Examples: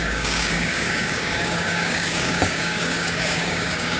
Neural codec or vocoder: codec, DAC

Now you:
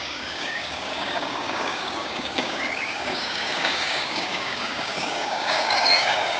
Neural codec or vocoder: codec, DAC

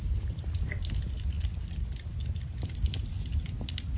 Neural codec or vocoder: none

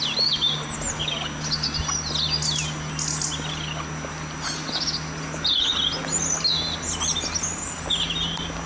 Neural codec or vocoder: none